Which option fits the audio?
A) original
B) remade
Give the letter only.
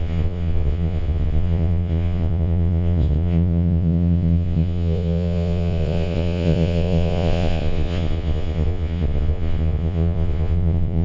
B